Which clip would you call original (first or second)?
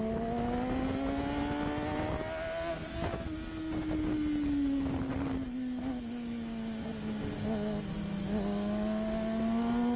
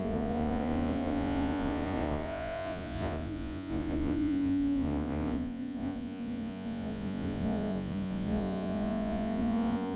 first